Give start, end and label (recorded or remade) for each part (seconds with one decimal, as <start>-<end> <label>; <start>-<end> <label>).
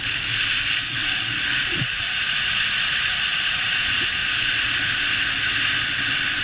0.0-1.0 recorded; 1.0-3.8 remade; 3.8-4.2 recorded; 4.2-4.9 remade; 4.9-6.4 recorded